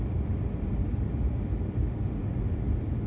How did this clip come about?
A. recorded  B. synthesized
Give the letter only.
A